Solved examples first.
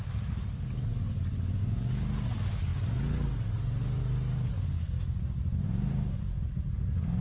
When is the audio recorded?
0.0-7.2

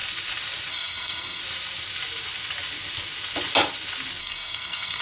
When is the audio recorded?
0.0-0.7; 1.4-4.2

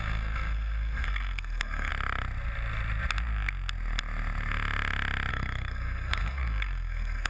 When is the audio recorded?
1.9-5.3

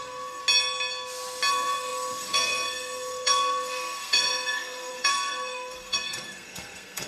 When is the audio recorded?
0.4-1.5

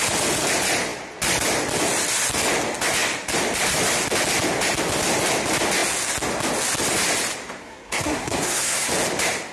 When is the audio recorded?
0.0-7.6; 8.9-9.5